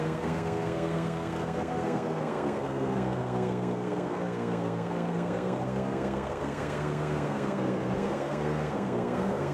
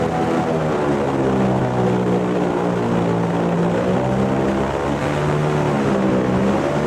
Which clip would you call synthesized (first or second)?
first